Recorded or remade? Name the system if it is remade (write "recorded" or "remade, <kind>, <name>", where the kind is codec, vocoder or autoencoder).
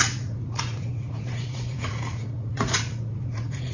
remade, vocoder, Vocos